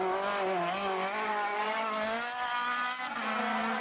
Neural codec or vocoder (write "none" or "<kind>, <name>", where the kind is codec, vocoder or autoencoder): none